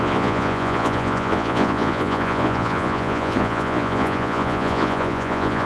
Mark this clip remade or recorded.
remade